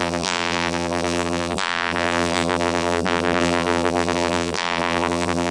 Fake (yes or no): yes